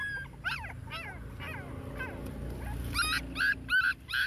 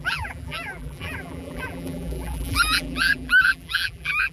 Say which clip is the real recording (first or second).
first